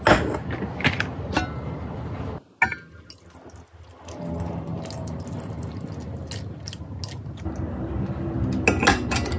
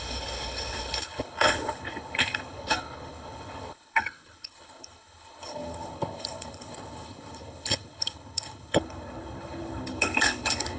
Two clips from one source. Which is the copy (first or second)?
second